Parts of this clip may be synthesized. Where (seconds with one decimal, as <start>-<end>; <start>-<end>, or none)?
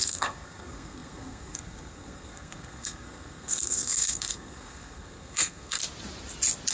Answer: 0.0-5.8